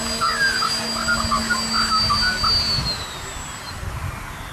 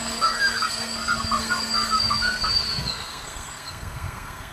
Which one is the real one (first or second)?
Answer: first